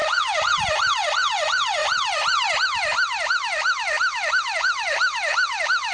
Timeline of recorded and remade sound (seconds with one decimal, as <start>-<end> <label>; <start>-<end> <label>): 0.0-0.5 recorded; 0.5-1.8 remade; 1.8-4.3 recorded; 4.3-5.9 remade